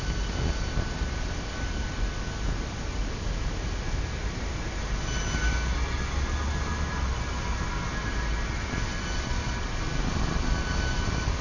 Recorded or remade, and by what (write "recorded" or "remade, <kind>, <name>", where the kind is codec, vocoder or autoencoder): recorded